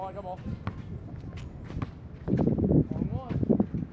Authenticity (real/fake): real